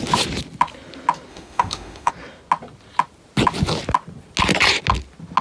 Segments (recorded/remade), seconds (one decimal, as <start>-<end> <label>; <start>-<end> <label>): 0.0-1.3 recorded; 1.3-2.1 remade; 2.1-5.4 recorded